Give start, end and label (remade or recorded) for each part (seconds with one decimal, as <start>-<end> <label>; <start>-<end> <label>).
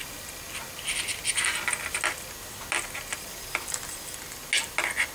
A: 0.0-5.1 recorded